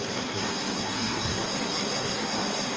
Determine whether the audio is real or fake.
fake